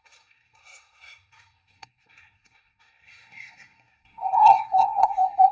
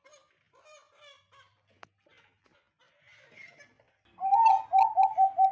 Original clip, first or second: second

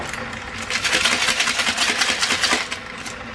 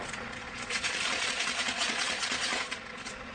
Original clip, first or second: first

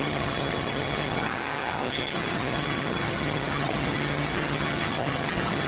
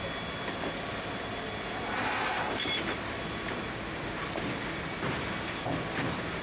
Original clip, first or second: second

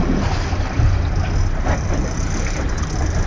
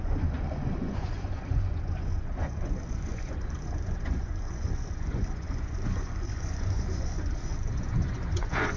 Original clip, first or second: first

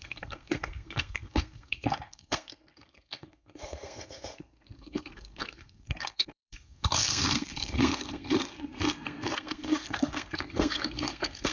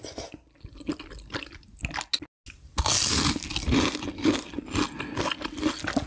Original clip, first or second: second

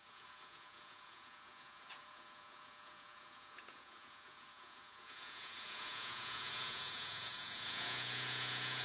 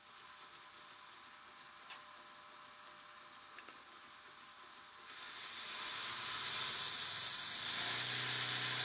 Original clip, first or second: second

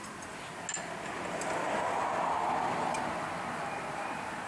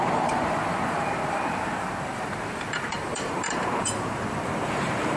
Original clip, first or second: first